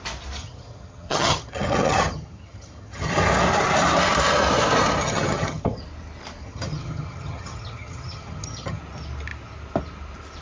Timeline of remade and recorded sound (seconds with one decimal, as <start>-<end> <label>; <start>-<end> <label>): 0.0-0.4 recorded; 0.4-3.1 remade; 3.1-5.0 recorded; 5.0-5.8 remade; 5.8-6.4 recorded; 6.4-8.8 remade; 8.8-10.4 recorded